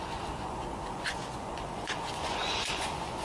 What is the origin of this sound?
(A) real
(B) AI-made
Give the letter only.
B